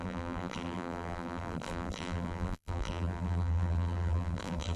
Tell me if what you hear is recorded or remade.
remade